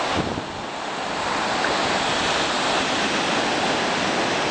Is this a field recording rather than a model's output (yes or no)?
yes